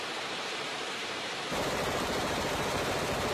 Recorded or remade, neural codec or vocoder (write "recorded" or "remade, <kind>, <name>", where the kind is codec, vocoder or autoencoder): remade, vocoder, BigVGAN v2